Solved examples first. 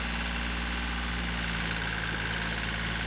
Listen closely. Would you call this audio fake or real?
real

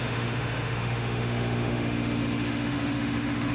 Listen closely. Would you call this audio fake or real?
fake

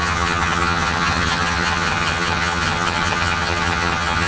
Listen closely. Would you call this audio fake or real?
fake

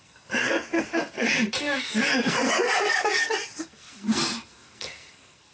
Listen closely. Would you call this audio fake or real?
fake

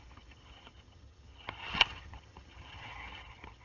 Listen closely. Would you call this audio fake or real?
fake